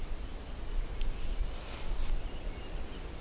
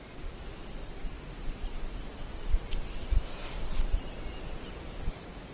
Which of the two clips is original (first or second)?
first